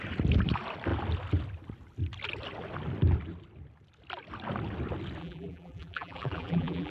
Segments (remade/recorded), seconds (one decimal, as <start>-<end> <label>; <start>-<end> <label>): 0.0-5.2 recorded; 5.2-6.9 remade